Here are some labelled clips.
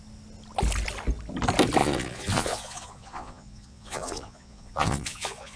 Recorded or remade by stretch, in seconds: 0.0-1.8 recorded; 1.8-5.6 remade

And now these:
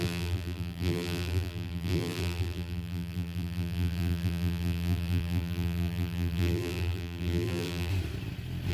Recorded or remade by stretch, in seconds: 0.0-7.9 remade; 7.9-8.7 recorded

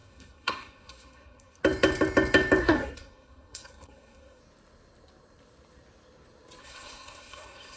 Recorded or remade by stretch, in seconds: 0.0-1.6 remade; 1.6-2.6 recorded; 2.6-4.4 remade; 4.4-6.6 recorded; 6.6-7.8 remade